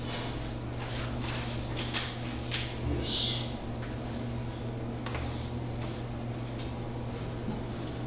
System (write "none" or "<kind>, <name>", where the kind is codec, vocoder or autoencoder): none